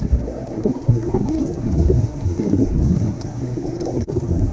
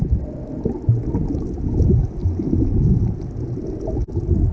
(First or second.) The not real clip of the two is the first